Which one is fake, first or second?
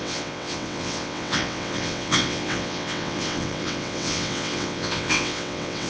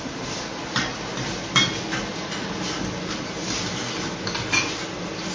first